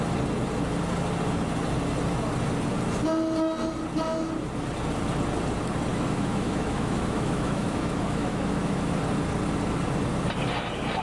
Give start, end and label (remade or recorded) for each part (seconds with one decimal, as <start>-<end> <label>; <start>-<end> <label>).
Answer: 0.0-5.9 recorded; 5.9-8.9 remade; 8.9-11.0 recorded